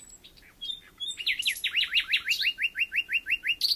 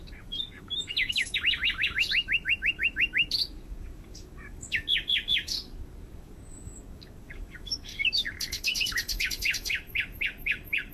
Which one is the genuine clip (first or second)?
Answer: first